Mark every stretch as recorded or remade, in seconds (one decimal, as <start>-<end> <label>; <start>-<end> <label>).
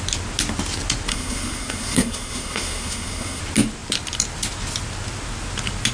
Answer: 0.0-1.1 recorded; 1.1-3.4 remade; 3.4-5.9 recorded